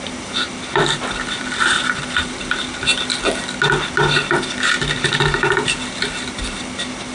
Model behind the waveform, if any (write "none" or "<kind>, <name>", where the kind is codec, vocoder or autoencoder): vocoder, BigVGAN v2